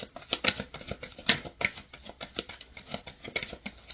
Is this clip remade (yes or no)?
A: no